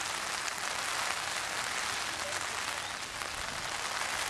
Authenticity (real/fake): real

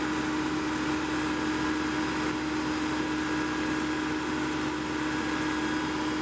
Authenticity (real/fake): real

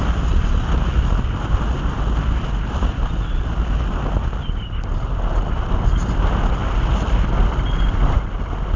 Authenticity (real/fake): real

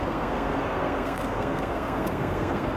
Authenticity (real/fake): fake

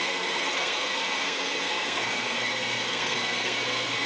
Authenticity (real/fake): fake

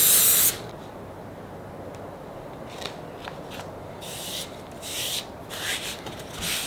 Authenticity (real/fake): real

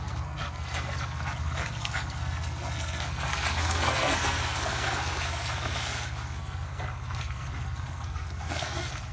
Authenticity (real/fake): fake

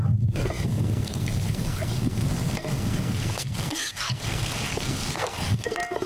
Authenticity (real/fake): fake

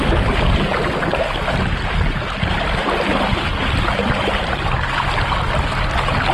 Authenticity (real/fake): real